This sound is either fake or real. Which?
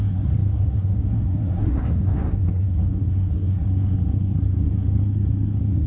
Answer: fake